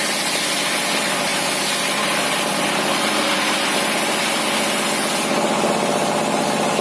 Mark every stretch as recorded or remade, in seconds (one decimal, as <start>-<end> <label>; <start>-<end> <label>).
0.0-6.8 recorded